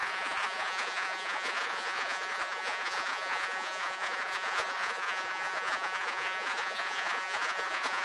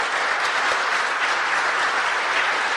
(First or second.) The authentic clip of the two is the second